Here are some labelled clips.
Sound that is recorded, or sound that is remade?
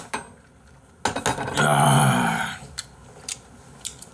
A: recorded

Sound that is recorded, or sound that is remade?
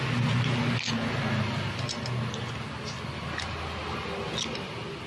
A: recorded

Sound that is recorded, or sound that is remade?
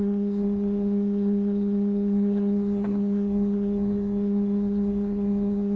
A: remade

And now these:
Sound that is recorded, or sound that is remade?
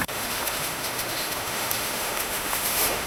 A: remade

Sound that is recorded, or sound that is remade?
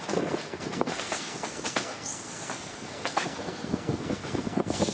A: remade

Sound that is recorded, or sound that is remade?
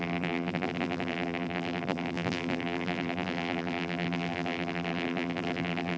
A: remade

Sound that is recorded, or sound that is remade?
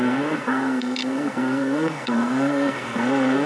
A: remade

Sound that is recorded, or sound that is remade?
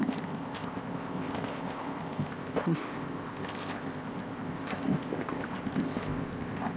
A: remade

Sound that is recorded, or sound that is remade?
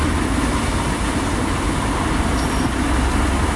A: recorded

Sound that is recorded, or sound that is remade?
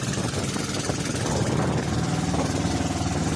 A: recorded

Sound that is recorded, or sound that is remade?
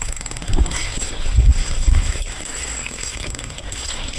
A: remade